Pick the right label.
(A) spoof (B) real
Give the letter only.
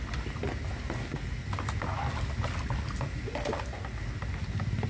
B